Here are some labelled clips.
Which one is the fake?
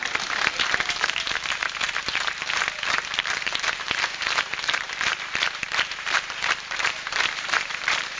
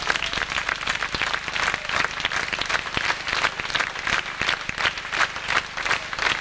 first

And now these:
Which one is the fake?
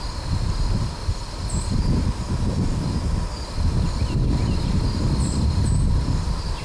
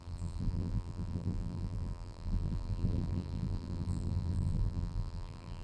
second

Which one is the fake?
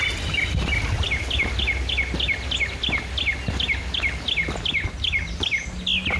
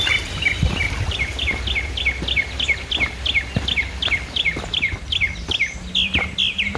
second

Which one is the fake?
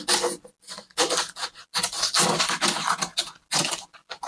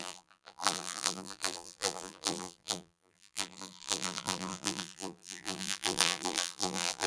second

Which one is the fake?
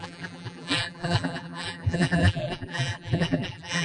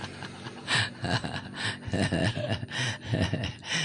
first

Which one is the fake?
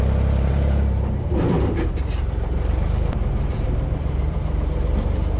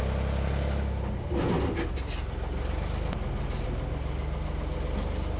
first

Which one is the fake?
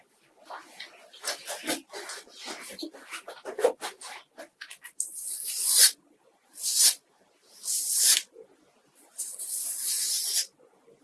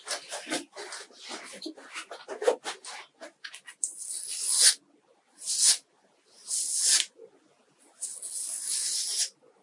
first